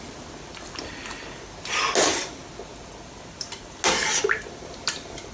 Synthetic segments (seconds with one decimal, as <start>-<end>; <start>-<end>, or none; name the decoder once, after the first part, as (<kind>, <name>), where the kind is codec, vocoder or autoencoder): none